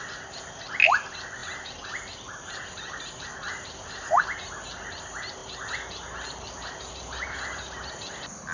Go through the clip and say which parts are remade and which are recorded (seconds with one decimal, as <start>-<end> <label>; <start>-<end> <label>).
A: 0.0-8.5 recorded